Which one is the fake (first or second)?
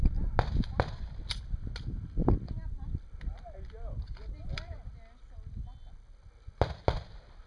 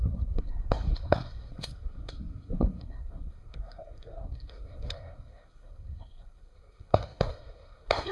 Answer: second